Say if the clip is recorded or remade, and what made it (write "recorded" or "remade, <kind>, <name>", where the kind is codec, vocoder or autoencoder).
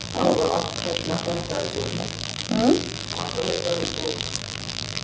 remade, vocoder, BigVGAN v2